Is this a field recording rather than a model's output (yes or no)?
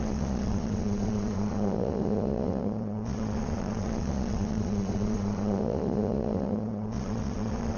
no